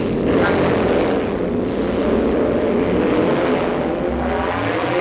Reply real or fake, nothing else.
real